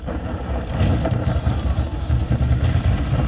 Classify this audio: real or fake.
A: real